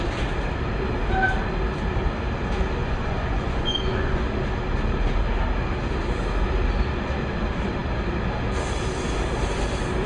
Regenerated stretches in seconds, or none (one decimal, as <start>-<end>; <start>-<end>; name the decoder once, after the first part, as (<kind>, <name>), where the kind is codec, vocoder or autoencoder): 2.8-4.3 (vocoder, Vocos)